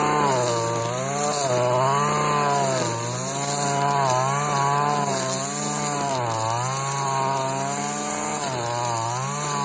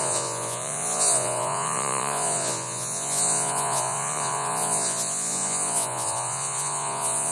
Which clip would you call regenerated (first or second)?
second